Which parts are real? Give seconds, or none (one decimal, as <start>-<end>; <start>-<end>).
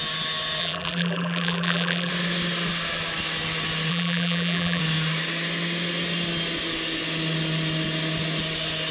0.0-0.6; 2.1-3.9; 4.8-8.9